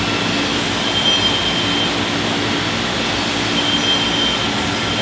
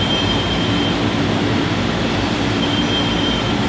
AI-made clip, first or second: second